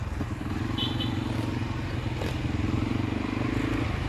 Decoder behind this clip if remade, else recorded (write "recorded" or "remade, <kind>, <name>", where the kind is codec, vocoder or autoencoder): recorded